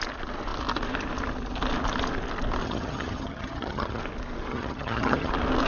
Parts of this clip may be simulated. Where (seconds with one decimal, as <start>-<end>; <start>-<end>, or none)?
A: 2.6-4.0; 4.5-5.3